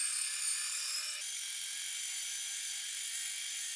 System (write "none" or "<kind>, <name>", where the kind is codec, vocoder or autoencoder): none